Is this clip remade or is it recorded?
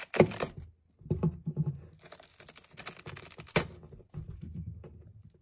recorded